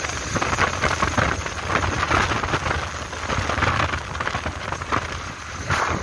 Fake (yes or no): no